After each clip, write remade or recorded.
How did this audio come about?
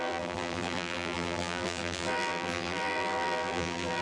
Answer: remade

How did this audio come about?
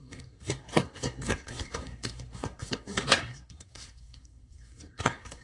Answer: remade